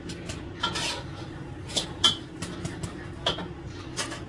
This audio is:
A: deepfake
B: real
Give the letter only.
B